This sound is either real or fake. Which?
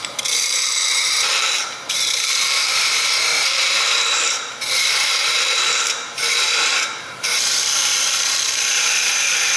fake